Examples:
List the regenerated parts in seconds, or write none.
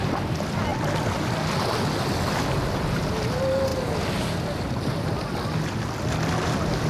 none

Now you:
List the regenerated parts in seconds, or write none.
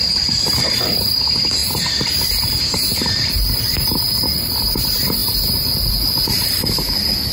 1.6-4.0 (vocoder, BigVGAN v2)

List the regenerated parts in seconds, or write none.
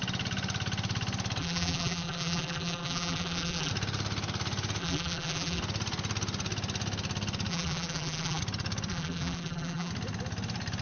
1.4-3.7 (vocoder, BigVGAN v2); 4.8-5.6; 7.5-8.4; 8.9-9.9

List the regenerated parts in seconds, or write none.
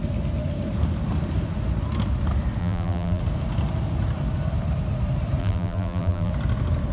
2.6-3.2 (vocoder, BigVGAN v2); 5.4-6.3